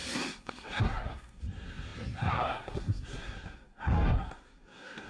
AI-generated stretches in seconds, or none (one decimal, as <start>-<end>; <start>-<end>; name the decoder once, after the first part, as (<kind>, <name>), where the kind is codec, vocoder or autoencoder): 0.0-5.1 (codec, SNAC)